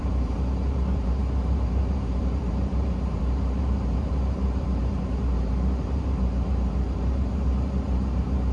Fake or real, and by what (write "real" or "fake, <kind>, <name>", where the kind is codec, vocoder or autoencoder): fake, vocoder, BigVGAN v2